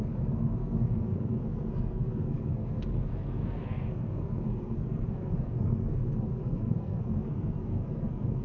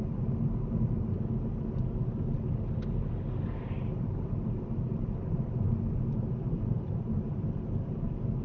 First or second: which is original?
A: second